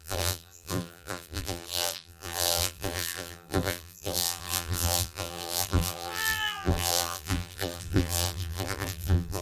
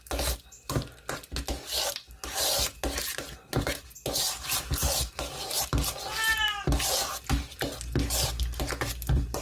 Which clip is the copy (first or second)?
first